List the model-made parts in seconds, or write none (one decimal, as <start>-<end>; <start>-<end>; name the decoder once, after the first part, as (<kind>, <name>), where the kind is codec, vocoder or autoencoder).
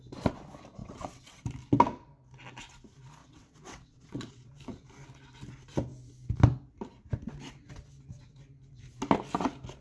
0.8-1.4 (vocoder, WaveNeXt); 3.2-4.5